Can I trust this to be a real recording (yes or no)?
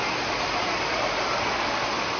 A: yes